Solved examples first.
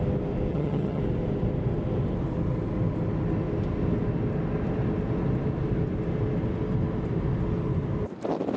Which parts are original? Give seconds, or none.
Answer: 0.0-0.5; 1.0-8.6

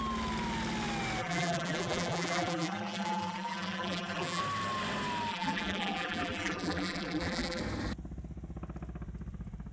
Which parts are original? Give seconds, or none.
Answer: 0.0-1.2; 4.4-5.3; 7.6-9.7